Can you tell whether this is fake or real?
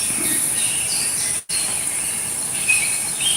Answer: real